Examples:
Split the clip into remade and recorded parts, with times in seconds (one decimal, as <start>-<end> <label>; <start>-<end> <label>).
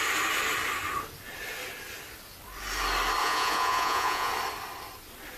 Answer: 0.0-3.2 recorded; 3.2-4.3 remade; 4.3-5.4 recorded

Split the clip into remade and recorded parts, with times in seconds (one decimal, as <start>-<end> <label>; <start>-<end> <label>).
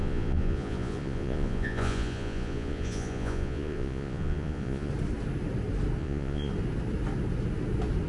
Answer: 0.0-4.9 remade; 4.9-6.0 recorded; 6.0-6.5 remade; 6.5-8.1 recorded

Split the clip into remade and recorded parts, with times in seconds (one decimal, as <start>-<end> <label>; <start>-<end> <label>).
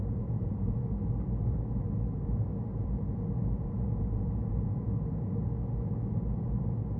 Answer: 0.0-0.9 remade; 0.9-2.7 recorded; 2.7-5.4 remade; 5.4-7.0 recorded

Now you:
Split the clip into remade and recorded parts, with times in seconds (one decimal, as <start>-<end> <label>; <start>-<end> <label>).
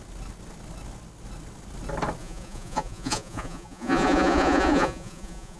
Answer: 0.0-2.2 recorded; 2.2-5.6 remade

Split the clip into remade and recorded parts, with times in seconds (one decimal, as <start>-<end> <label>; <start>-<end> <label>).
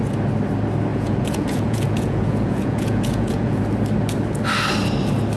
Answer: 0.0-0.9 recorded; 0.9-3.6 remade; 3.6-5.4 recorded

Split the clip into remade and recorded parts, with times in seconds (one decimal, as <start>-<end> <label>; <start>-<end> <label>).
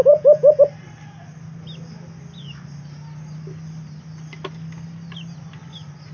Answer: 0.0-0.6 remade; 0.6-6.1 recorded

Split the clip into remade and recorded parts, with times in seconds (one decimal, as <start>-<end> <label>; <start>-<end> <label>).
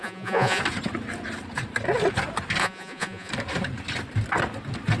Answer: 0.0-0.6 remade; 0.6-2.6 recorded; 2.6-3.3 remade; 3.3-5.0 recorded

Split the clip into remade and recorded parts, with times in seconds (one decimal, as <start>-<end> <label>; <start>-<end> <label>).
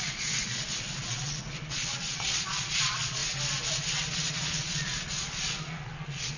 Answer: 0.0-3.2 remade; 3.2-4.1 recorded; 4.1-6.4 remade